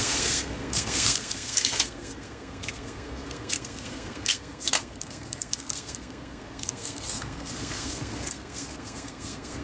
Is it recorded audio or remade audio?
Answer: remade